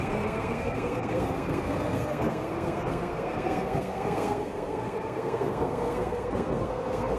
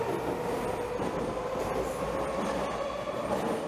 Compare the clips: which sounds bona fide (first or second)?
second